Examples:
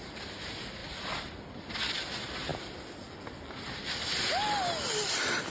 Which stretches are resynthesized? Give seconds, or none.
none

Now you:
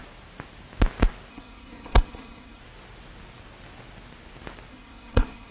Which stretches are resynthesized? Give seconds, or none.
1.3-2.6 (codec, SNAC); 4.7-5.5